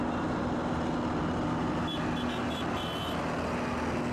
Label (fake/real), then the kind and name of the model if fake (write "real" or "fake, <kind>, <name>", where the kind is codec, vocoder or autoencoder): real